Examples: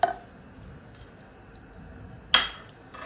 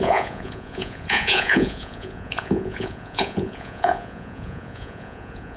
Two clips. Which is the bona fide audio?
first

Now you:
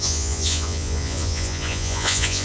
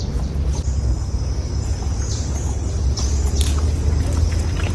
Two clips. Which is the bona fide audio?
second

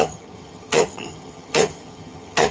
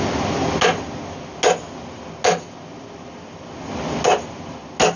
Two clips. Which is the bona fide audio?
second